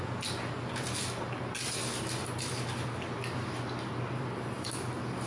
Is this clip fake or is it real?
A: real